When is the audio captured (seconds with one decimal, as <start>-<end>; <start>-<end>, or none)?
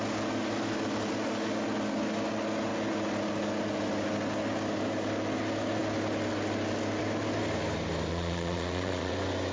0.0-8.1; 9.1-9.5